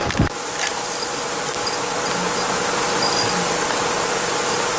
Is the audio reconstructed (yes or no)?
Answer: no